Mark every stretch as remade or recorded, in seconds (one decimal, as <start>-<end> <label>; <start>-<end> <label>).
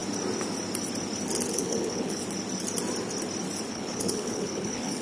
0.0-1.5 recorded; 1.5-2.2 remade; 2.2-3.7 recorded; 3.7-5.0 remade